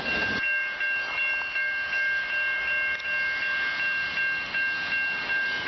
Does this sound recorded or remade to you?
recorded